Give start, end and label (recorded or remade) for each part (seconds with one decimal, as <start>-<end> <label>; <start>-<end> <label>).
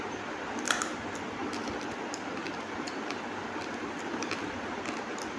0.0-1.4 recorded; 1.4-4.6 remade; 4.6-5.4 recorded